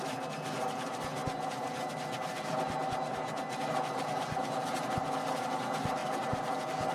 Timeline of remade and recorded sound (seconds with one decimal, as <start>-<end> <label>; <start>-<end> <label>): 0.0-6.9 recorded